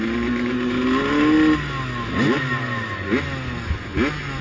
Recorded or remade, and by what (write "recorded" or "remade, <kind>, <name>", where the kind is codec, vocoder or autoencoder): recorded